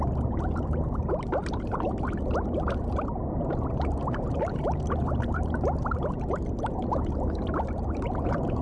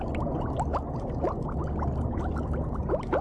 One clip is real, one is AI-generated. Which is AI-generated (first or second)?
first